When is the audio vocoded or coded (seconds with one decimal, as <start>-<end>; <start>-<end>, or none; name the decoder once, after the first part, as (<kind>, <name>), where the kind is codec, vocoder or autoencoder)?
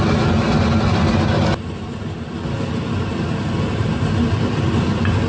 none